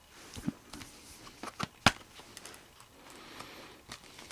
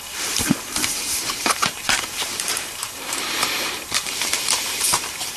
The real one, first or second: first